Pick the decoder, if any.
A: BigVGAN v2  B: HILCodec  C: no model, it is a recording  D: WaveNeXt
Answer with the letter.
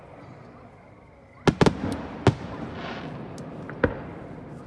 C